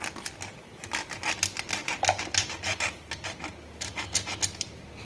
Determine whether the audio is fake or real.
real